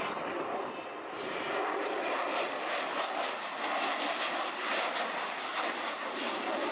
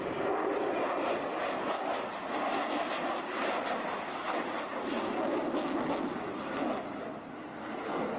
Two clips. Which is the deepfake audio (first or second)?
first